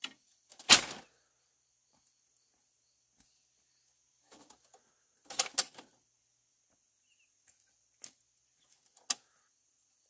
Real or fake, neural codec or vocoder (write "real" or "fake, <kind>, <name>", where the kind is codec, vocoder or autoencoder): real